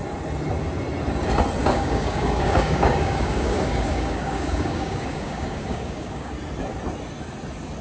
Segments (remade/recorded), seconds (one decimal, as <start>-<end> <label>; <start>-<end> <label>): 0.0-1.6 recorded; 1.6-6.3 remade; 6.3-7.8 recorded

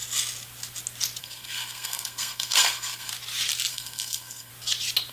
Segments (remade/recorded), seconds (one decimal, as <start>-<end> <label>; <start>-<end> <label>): 0.0-1.2 recorded; 1.2-3.1 remade; 3.1-3.7 recorded; 3.7-4.5 remade; 4.5-5.1 recorded

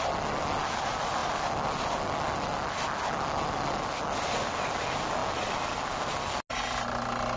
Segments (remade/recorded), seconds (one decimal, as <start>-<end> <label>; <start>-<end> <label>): 0.0-7.4 recorded